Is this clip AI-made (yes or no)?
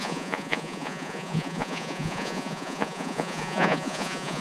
yes